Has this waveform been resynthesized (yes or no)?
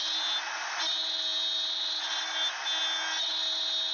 no